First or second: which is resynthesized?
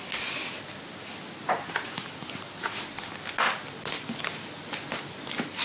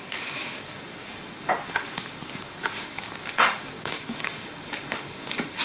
second